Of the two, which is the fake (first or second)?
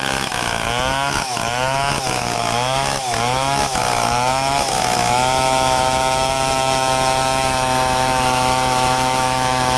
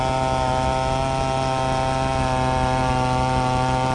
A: first